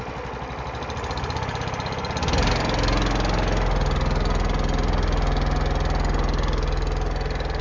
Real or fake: real